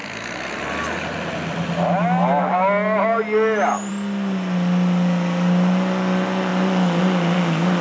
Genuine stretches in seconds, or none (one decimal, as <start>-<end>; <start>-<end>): 0.0-7.8